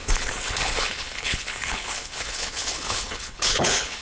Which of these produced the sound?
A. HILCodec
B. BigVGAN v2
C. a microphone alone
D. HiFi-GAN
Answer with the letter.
A